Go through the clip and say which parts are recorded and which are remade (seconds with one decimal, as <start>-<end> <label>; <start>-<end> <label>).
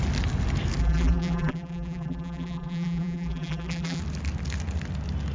0.0-0.8 recorded; 0.8-4.0 remade; 4.0-5.3 recorded